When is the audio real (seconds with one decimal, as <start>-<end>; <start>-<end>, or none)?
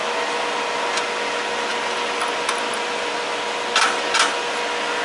0.0-5.0